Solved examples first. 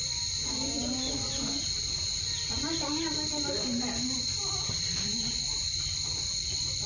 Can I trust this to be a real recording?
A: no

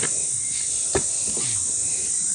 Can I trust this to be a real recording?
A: yes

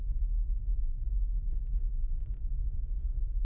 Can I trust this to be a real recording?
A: yes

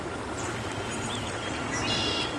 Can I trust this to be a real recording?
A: yes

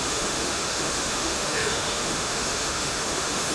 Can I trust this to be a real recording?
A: no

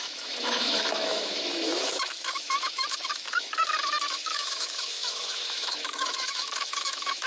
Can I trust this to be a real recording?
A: no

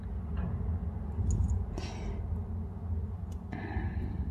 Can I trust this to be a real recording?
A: yes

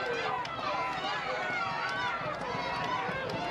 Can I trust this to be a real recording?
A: yes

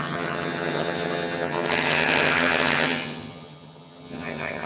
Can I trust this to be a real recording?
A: no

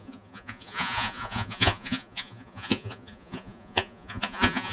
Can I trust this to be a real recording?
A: no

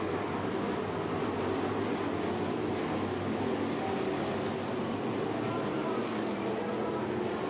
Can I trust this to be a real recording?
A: yes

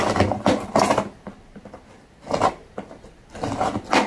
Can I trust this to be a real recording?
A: yes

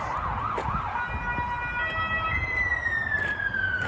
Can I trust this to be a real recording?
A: yes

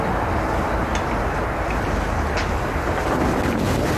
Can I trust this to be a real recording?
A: yes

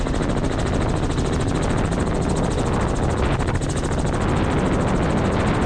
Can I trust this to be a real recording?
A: yes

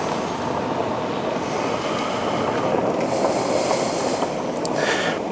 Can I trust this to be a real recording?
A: yes